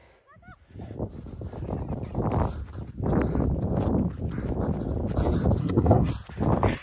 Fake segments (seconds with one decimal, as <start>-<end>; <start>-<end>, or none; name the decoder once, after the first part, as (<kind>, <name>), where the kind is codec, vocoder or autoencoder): 5.6-6.1 (codec, SNAC)